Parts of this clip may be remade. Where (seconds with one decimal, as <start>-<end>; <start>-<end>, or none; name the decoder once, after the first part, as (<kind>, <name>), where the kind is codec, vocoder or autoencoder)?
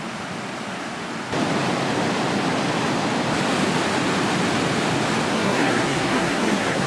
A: 5.3-6.9 (codec, SNAC)